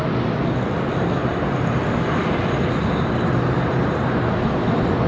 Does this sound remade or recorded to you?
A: recorded